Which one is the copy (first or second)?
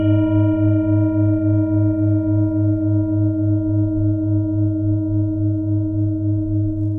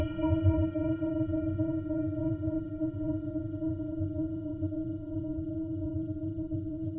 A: second